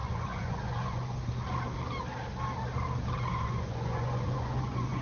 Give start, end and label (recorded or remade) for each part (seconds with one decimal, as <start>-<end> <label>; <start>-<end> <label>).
0.0-1.3 remade; 1.3-3.3 recorded; 3.3-5.0 remade

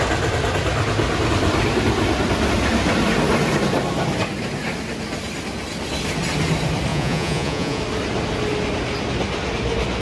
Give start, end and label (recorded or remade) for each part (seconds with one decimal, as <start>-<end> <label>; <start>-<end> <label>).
0.0-6.9 recorded; 6.9-7.8 remade; 7.8-10.0 recorded

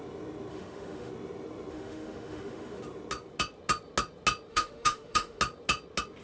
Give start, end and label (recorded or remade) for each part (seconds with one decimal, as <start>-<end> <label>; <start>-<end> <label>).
0.0-0.5 recorded; 0.5-1.1 remade; 1.1-1.7 recorded; 1.7-2.8 remade; 2.8-4.5 recorded; 4.5-5.4 remade; 5.4-6.2 recorded

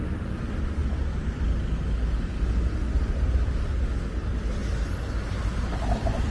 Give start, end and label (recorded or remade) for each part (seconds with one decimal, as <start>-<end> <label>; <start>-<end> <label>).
0.0-6.3 recorded

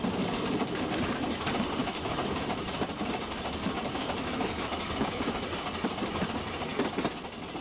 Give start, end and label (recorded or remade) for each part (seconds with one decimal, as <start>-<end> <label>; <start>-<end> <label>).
0.0-1.8 recorded; 1.8-2.3 remade; 2.3-4.0 recorded; 4.0-5.4 remade; 5.4-7.6 recorded

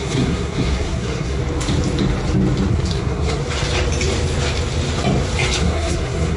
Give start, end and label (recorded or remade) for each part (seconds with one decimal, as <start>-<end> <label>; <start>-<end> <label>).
0.0-1.4 remade; 1.4-2.7 recorded; 2.7-3.4 remade; 3.4-5.6 recorded; 5.6-6.4 remade

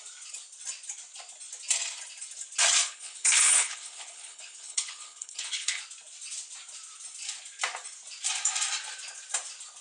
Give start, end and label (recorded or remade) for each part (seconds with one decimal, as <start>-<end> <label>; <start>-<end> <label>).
0.0-2.8 recorded; 2.8-5.8 remade; 5.8-9.8 recorded